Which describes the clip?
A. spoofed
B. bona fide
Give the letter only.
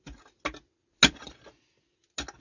B